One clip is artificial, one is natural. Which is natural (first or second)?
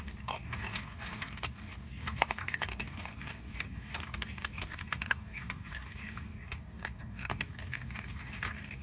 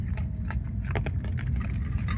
second